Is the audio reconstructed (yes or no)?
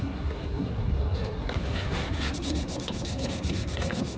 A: yes